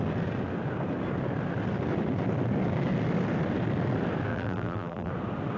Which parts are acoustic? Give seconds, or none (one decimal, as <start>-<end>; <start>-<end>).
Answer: 0.0-4.3; 5.1-5.6